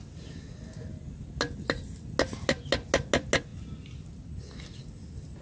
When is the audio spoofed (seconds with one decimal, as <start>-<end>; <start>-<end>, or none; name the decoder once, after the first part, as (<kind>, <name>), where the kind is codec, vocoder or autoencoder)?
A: none